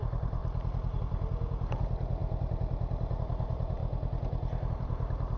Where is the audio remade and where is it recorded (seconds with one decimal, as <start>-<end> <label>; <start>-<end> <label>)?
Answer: 0.0-0.4 remade; 0.4-1.0 recorded; 1.0-3.8 remade; 3.8-4.7 recorded; 4.7-5.4 remade